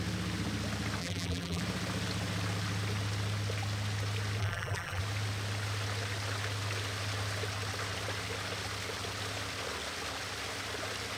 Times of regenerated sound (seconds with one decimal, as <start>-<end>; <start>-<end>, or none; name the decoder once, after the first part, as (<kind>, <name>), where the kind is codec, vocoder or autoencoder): 1.0-1.6 (vocoder, BigVGAN v2); 4.4-5.0